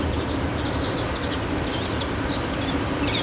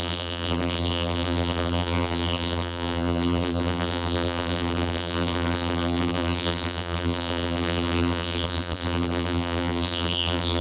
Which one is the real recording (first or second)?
first